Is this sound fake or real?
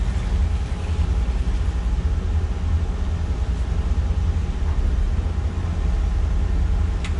real